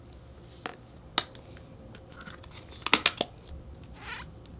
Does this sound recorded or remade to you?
recorded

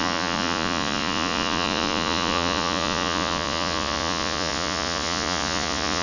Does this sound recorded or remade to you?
remade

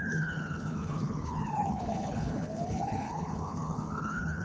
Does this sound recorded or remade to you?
remade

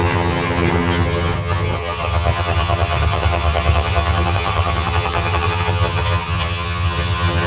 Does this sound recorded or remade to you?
remade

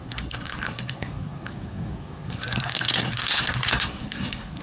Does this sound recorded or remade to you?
remade